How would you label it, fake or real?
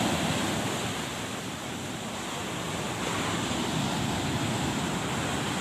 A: real